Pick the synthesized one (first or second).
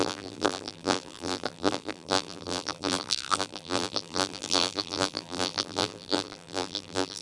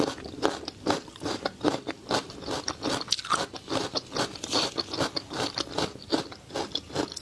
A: first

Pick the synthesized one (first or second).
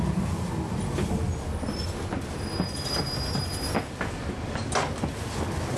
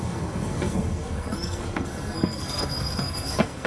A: second